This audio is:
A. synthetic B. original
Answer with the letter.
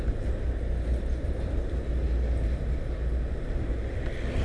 B